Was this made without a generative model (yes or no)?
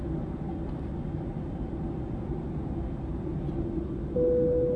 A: yes